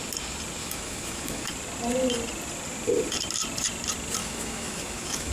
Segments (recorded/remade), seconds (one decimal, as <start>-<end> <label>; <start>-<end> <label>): 0.0-0.6 recorded; 0.6-1.5 remade; 1.5-4.2 recorded; 4.2-5.3 remade